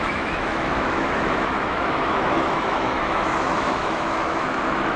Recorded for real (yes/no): no